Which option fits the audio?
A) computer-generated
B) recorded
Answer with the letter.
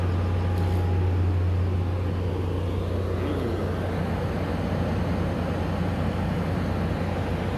B